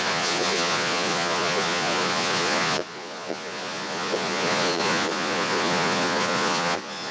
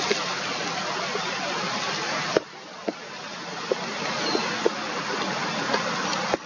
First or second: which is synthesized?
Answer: first